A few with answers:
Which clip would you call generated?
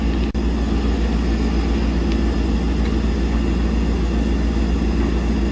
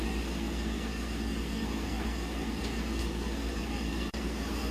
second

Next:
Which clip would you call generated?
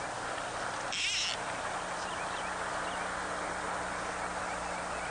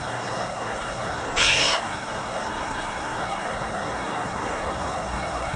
second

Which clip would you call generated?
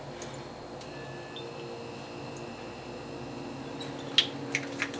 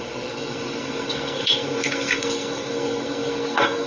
second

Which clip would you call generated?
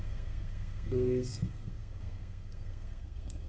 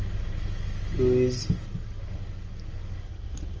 first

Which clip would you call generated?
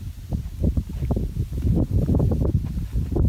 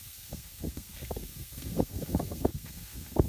second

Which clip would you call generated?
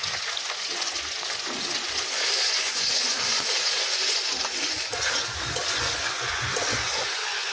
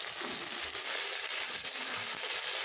first